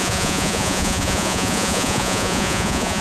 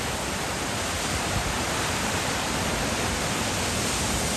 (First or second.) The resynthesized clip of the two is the first